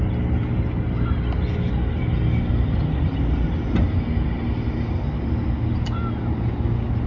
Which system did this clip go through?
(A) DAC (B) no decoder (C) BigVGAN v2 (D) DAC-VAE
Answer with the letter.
B